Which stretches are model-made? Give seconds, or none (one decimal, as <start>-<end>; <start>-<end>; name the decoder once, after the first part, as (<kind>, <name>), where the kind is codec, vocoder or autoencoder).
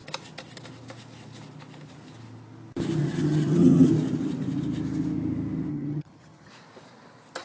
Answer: 3.0-3.9 (vocoder, HiFi-GAN); 5.7-6.5